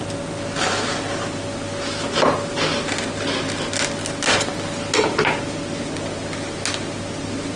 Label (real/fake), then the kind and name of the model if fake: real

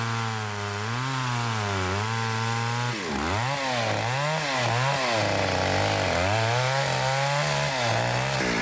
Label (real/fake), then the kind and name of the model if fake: real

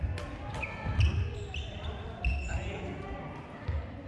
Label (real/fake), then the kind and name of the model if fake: real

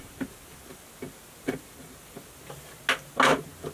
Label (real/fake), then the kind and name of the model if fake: real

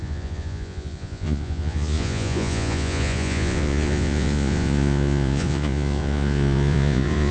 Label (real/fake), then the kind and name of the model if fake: fake, vocoder, Vocos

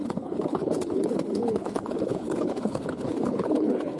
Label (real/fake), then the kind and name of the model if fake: fake, codec, HILCodec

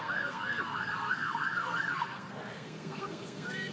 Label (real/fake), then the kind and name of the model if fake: fake, codec, SNAC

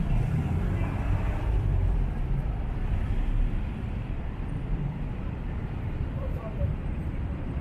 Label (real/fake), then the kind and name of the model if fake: fake, vocoder, BigVGAN v2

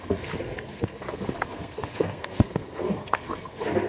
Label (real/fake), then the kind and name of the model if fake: fake, codec, SNAC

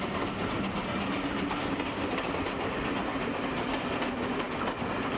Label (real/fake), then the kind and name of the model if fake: real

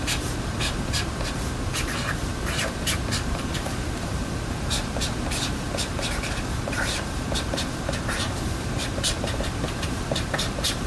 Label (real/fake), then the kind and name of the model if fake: fake, vocoder, BigVGAN v2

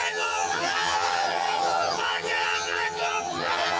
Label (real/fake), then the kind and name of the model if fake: fake, vocoder, HiFi-GAN